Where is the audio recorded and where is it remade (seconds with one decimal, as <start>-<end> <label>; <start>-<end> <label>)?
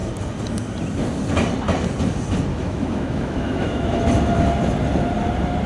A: 0.0-2.5 recorded; 2.5-4.0 remade; 4.0-5.7 recorded